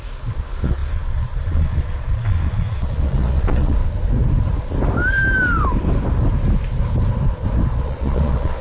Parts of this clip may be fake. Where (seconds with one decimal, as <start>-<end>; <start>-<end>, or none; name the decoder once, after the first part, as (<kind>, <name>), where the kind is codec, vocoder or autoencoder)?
0.0-3.8 (vocoder, Vocos); 7.8-8.6